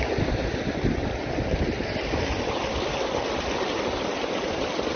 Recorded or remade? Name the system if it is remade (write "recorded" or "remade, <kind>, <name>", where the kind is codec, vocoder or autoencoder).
recorded